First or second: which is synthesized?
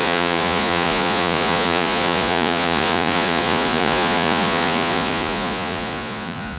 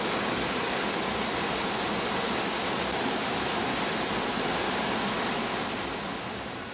first